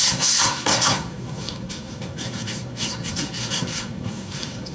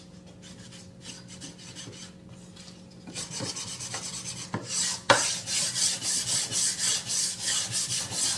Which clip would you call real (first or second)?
second